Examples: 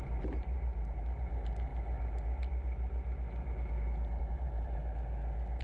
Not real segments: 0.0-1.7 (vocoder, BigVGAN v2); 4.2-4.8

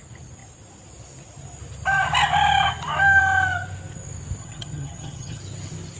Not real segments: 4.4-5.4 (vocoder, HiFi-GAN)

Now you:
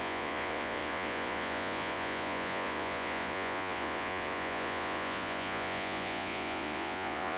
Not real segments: 0.0-7.4 (vocoder, Vocos)

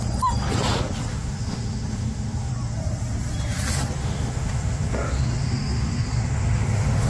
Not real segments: 1.1-2.5 (autoencoder, DAC-VAE); 4.0-7.1

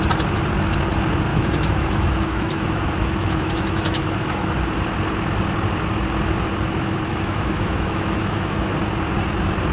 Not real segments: 1.3-4.5 (autoencoder, DAC-VAE); 7.1-8.7

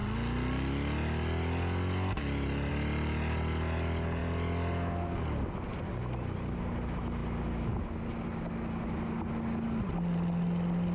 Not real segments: none

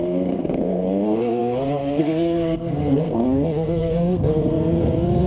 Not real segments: 0.0-5.3 (codec, SNAC)

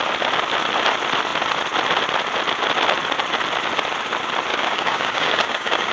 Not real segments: 4.5-5.9 (codec, DAC)